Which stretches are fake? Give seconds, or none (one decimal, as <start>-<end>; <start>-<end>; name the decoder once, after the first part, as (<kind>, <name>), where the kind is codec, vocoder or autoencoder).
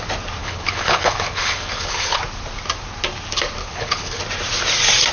0.4-2.2 (codec, HILCodec); 3.6-4.2